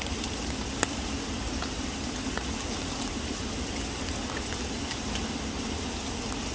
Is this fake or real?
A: real